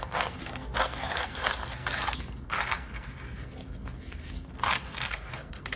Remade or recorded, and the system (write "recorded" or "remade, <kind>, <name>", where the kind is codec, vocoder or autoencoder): remade, codec, SNAC